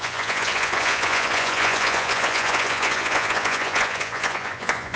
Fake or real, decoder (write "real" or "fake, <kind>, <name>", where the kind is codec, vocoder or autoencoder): fake, vocoder, Vocos